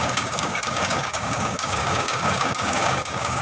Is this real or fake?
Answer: fake